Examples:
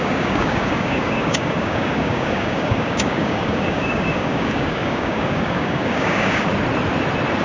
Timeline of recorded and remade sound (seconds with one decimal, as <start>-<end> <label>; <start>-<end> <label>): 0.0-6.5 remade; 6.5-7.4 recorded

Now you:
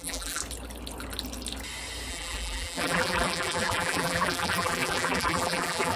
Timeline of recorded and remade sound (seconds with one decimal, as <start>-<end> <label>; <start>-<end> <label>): 0.0-0.4 remade; 0.4-2.1 recorded; 2.1-6.0 remade

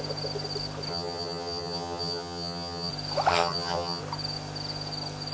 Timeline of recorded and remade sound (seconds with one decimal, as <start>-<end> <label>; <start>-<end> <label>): 0.0-0.9 recorded; 0.9-2.9 remade; 2.9-3.3 recorded; 3.3-4.0 remade; 4.0-5.3 recorded

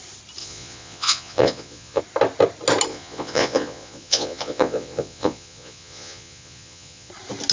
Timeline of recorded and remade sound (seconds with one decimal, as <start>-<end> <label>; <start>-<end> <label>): 0.0-0.4 recorded; 0.4-2.0 remade; 2.0-2.9 recorded; 2.9-7.1 remade; 7.1-7.5 recorded

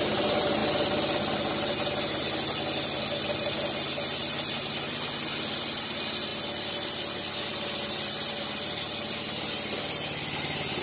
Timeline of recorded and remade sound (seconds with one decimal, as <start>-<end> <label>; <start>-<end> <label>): 0.0-6.3 recorded; 6.3-9.8 remade; 9.8-10.8 recorded